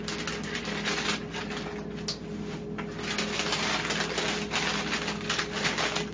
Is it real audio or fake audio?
real